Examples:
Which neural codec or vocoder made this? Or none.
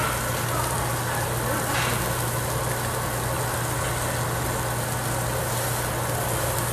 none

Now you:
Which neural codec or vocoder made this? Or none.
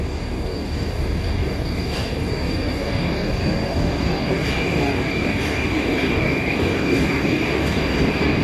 codec, DAC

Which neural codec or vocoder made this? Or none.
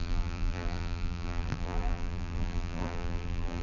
vocoder, BigVGAN v2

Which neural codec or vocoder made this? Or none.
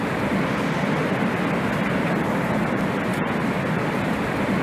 none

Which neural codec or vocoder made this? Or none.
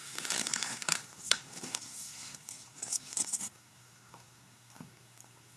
codec, SNAC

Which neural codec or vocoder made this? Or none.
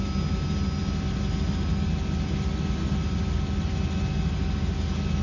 none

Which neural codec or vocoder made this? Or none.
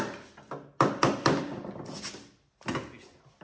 none